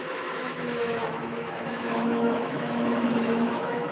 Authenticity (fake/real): fake